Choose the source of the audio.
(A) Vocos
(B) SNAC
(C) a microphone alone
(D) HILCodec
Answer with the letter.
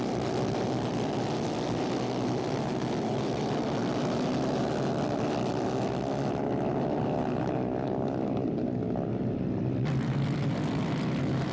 C